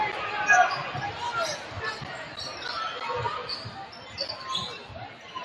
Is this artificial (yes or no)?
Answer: no